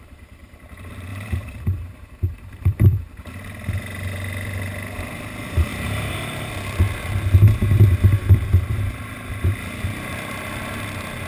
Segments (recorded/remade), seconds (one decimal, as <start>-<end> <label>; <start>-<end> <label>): 0.0-1.1 recorded; 1.1-3.3 remade; 3.3-5.7 recorded; 5.7-6.5 remade; 6.5-10.1 recorded; 10.1-10.9 remade; 10.9-11.3 recorded